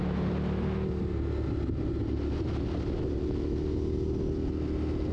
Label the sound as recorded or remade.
recorded